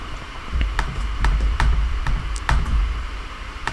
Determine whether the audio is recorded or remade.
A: remade